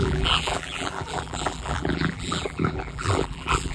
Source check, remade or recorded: remade